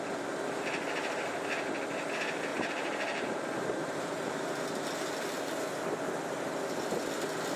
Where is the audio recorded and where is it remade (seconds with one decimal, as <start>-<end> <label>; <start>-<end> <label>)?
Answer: 0.0-2.5 recorded; 2.5-4.6 remade; 4.6-7.6 recorded